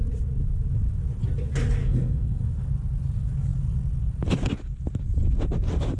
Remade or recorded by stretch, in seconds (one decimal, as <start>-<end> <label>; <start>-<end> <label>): 0.0-1.8 recorded; 1.8-2.4 remade; 2.4-6.0 recorded